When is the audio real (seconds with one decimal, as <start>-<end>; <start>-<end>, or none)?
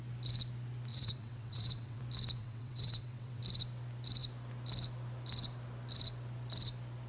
0.0-0.9; 2.0-2.4; 3.4-7.1